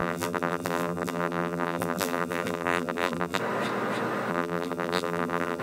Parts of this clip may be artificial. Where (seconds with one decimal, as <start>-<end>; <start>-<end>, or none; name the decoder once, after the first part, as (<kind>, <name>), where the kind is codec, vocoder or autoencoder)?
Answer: 0.0-3.4 (vocoder, BigVGAN v2); 4.3-5.6